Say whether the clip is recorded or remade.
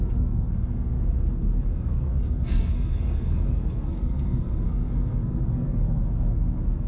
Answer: remade